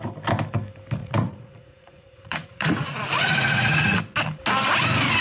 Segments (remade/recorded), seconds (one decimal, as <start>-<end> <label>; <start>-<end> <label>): 0.0-1.0 recorded; 1.0-4.0 remade; 4.0-5.2 recorded